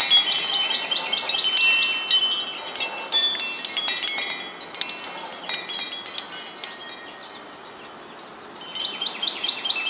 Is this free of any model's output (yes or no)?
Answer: yes